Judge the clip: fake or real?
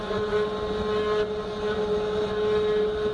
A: real